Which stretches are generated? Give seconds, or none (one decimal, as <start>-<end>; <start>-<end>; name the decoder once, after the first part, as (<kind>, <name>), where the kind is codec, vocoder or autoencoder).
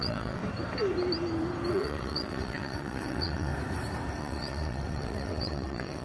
0.0-0.4 (vocoder, WaveNeXt); 1.7-3.5; 4.2-6.0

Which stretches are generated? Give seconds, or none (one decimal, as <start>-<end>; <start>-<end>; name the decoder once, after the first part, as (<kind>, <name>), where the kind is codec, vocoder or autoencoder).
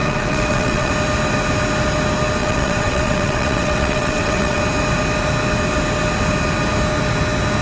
0.0-0.9 (vocoder, WaveNeXt); 2.4-4.6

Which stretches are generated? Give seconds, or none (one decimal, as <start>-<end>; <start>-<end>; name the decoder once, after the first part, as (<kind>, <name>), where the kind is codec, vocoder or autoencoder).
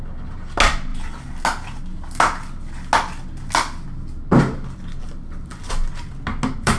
none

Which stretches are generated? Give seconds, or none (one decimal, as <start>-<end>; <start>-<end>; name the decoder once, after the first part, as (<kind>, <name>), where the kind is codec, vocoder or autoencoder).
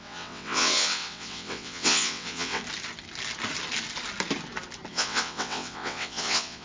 0.0-2.6 (vocoder, WaveNeXt); 4.9-6.6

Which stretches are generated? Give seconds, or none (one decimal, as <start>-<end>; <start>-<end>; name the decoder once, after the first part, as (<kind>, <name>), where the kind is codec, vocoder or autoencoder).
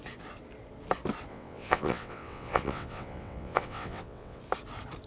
1.3-4.4 (vocoder, WaveNeXt)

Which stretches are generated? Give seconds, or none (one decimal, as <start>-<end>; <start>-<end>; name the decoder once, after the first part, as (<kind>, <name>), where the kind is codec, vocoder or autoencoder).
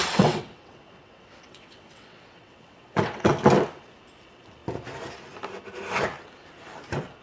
0.0-3.3 (vocoder, WaveNeXt)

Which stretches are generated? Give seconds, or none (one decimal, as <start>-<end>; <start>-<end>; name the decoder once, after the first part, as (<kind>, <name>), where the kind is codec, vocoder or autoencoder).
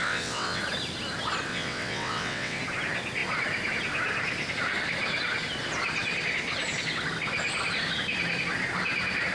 0.0-0.6 (vocoder, WaveNeXt); 1.5-2.6